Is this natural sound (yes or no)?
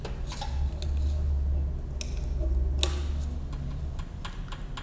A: yes